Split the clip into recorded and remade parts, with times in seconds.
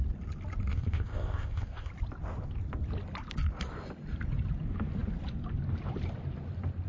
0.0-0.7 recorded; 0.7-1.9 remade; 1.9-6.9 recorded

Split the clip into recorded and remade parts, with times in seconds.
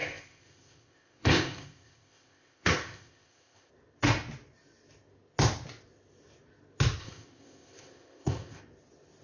0.0-3.7 remade; 3.7-7.0 recorded; 7.0-8.6 remade; 8.6-9.2 recorded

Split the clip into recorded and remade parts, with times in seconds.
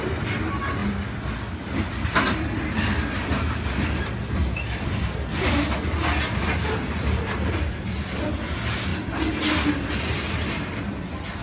0.0-11.4 recorded